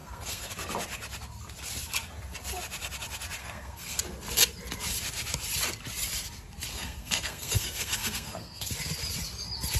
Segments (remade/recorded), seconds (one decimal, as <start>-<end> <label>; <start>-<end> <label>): 0.0-0.5 remade; 0.5-3.4 recorded; 3.4-4.0 remade; 4.0-6.7 recorded; 6.7-8.7 remade; 8.7-9.8 recorded